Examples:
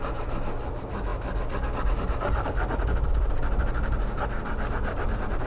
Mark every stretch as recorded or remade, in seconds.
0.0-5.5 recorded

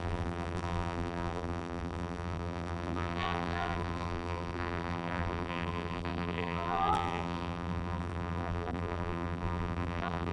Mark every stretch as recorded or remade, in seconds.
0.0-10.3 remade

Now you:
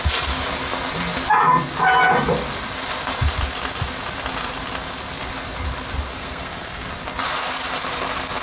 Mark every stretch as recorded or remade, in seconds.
0.0-6.1 recorded; 6.1-6.9 remade; 6.9-8.4 recorded

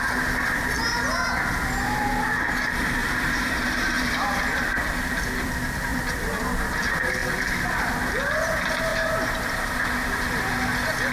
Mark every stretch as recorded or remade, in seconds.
0.0-3.0 recorded; 3.0-5.5 remade; 5.5-5.9 recorded; 5.9-6.4 remade; 6.4-7.2 recorded; 7.2-8.4 remade; 8.4-8.9 recorded; 8.9-10.1 remade; 10.1-11.1 recorded

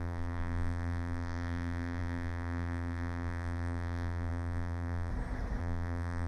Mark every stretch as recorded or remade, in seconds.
0.0-5.1 remade; 5.1-5.6 recorded; 5.6-6.3 remade

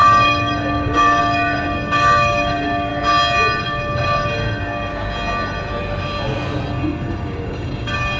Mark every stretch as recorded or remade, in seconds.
0.0-2.9 remade; 2.9-3.6 recorded; 3.6-4.9 remade; 4.9-6.7 recorded; 6.7-8.2 remade